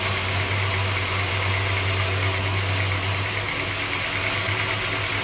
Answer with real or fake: real